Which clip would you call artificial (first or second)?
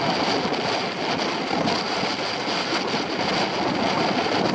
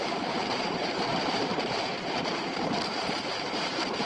second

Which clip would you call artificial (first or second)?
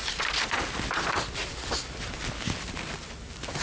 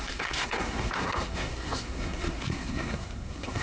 second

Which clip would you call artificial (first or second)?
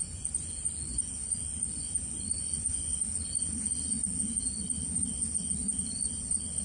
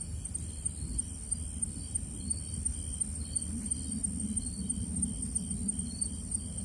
first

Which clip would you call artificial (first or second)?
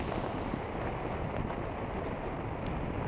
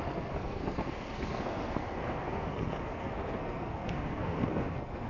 second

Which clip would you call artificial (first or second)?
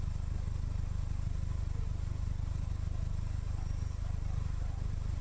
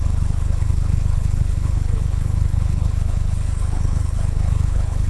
second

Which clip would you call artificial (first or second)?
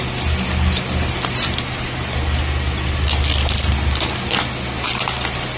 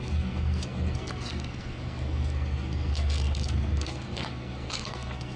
second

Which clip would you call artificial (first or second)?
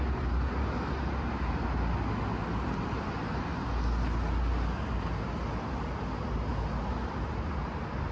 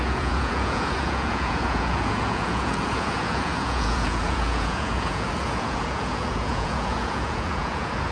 second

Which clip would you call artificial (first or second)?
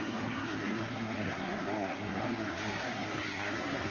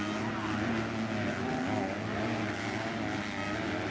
first